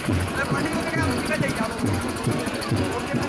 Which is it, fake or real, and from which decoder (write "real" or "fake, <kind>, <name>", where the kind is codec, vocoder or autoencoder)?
fake, vocoder, Vocos